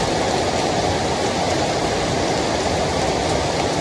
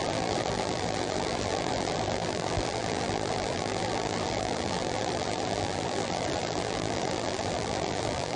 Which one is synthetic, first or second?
second